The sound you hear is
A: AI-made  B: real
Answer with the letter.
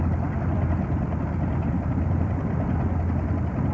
B